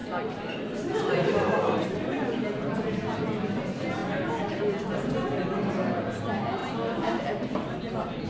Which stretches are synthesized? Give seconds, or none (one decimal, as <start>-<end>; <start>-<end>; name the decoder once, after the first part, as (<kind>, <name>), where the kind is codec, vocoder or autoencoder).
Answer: none